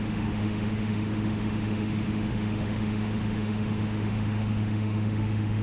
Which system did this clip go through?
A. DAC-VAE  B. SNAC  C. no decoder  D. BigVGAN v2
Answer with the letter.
A